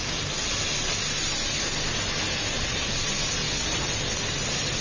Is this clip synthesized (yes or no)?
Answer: no